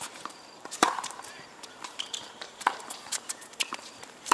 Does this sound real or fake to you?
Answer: fake